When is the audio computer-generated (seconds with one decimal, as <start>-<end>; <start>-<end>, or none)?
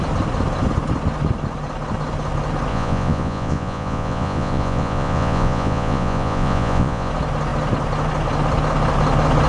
2.7-7.1